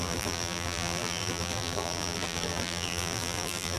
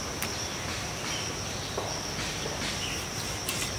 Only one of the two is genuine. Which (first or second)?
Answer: second